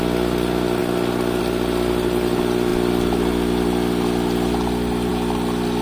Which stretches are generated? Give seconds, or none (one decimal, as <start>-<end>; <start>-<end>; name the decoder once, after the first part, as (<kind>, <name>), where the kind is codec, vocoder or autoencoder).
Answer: none